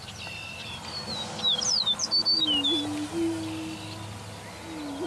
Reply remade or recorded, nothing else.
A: recorded